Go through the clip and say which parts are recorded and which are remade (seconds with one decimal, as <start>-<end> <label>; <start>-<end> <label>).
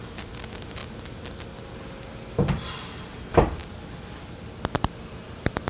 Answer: 0.0-5.7 recorded